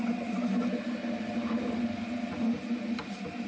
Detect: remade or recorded recorded